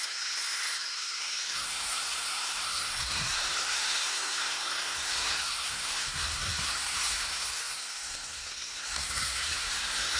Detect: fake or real fake